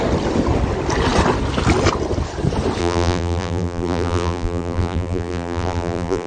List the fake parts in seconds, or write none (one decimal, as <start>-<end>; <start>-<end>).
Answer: 2.8-6.3